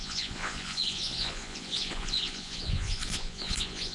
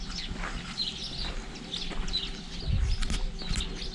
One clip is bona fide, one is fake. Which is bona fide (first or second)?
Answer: second